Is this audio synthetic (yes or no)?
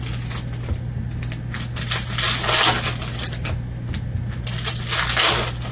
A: no